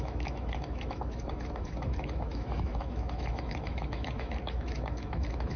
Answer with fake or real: fake